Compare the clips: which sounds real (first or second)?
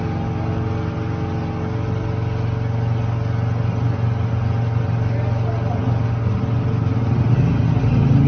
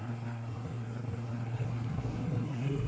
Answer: first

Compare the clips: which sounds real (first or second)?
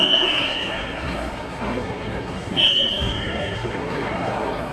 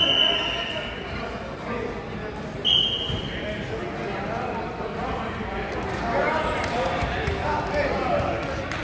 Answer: second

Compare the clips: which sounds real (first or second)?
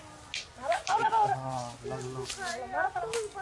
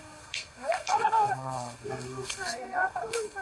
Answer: first